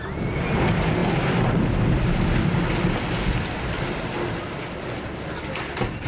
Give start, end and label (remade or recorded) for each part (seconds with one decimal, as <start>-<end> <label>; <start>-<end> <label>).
0.0-6.1 recorded